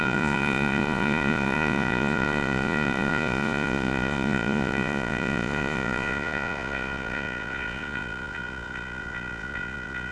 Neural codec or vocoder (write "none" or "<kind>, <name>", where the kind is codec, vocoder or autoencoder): vocoder, Vocos